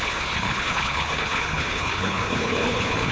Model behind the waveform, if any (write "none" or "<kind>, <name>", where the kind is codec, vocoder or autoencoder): codec, HILCodec